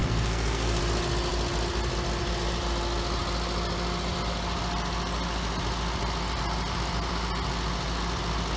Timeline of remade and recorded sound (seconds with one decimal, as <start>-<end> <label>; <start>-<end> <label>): 0.0-0.8 remade; 0.8-8.6 recorded